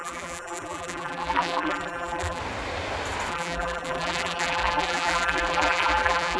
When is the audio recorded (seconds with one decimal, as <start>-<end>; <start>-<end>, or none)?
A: 2.4-3.3